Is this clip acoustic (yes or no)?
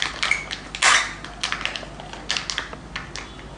yes